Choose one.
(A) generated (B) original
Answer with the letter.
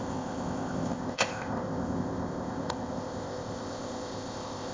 A